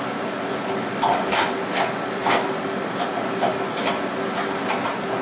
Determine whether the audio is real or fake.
real